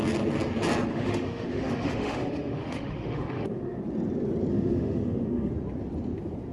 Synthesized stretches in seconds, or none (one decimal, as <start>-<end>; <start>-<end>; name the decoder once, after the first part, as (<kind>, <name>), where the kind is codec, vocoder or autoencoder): 0.9-3.8 (autoencoder, DAC-VAE); 4.5-5.5